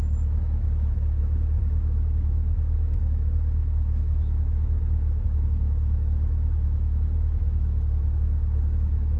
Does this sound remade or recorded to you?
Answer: remade